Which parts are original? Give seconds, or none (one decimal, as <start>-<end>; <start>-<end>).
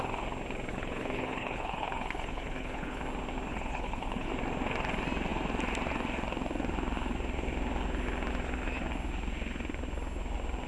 0.0-0.7; 3.0-3.5; 4.3-10.7